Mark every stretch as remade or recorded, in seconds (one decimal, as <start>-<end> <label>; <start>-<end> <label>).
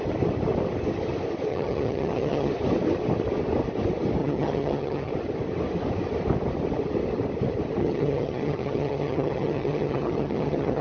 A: 0.0-1.5 recorded; 1.5-2.5 remade; 2.5-4.2 recorded; 4.2-5.1 remade; 5.1-7.8 recorded; 7.8-10.8 remade